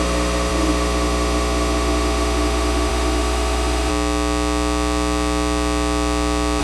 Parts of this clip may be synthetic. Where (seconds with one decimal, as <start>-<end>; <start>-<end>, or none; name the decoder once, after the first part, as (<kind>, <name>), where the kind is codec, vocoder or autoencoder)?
0.0-3.9 (autoencoder, DAC-VAE)